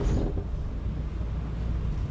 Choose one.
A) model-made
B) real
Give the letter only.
B